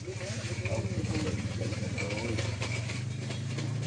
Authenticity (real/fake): fake